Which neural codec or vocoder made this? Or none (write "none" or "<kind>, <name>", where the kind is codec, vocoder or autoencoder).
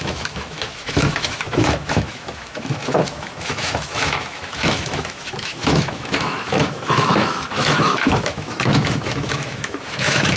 autoencoder, DAC-VAE